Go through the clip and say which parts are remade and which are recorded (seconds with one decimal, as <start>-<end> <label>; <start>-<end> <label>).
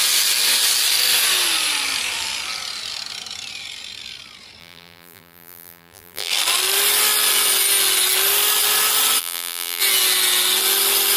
0.0-4.6 recorded; 4.6-6.3 remade; 6.3-9.2 recorded; 9.2-9.8 remade; 9.8-11.2 recorded